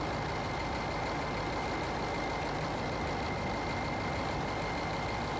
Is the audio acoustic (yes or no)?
yes